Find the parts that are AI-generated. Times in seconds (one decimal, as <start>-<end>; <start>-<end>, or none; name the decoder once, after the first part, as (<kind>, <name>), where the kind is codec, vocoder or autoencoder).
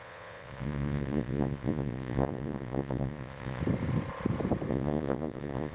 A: 0.0-3.6 (vocoder, Vocos); 4.7-5.7